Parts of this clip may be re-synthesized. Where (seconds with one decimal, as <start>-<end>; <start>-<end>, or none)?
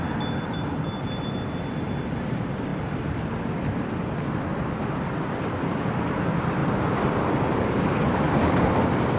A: none